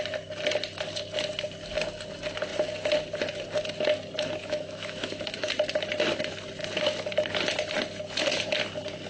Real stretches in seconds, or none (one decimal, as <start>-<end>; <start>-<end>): 0.0-4.4; 5.5-9.1